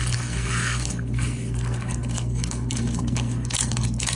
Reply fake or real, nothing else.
fake